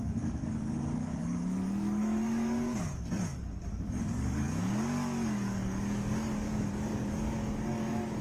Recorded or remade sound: remade